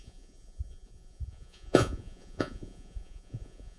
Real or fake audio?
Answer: fake